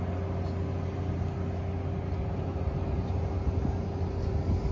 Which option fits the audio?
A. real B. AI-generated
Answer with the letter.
A